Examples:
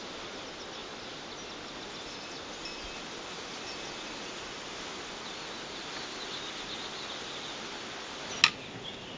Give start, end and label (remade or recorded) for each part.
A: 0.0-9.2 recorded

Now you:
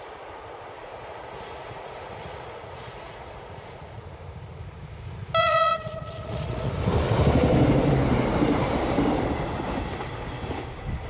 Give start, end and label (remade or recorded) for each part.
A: 0.0-0.8 recorded; 0.8-4.0 remade; 4.0-5.4 recorded; 5.4-6.7 remade; 6.7-11.1 recorded

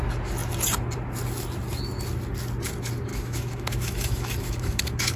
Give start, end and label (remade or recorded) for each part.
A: 0.0-3.1 recorded; 3.1-5.2 remade

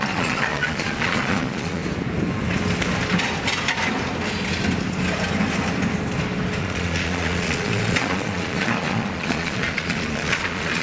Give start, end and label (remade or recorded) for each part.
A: 0.0-1.8 remade; 1.8-6.6 recorded; 6.6-10.8 remade

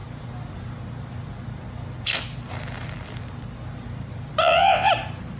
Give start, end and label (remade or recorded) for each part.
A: 0.0-4.4 recorded; 4.4-4.9 remade; 4.9-5.4 recorded

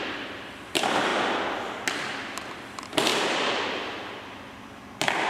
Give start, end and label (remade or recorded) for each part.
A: 0.0-1.1 remade; 1.1-2.7 recorded; 2.7-3.1 remade; 3.1-5.3 recorded